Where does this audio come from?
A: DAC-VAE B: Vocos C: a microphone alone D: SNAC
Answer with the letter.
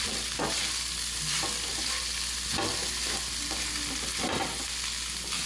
C